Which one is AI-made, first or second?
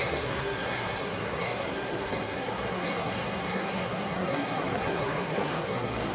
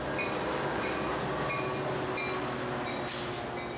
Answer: first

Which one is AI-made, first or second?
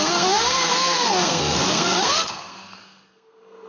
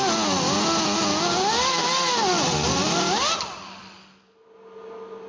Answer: first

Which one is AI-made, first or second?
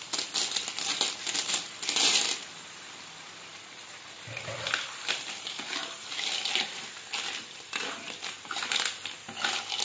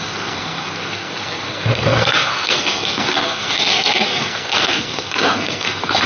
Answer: second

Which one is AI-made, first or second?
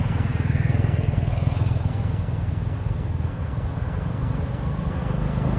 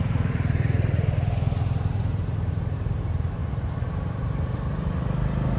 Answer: first